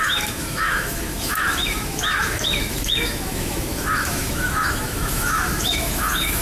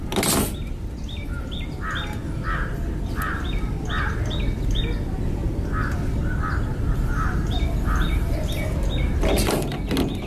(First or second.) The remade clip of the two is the first